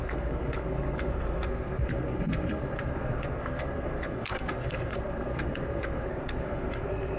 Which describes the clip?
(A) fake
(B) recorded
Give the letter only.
A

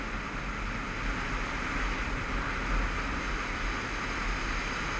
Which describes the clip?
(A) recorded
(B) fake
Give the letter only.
A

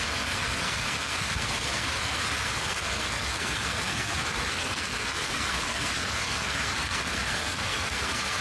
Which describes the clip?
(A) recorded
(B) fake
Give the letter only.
B